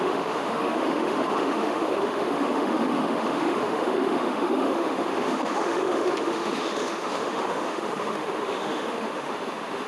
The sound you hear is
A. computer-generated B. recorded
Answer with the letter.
A